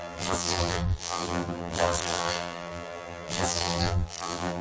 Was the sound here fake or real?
fake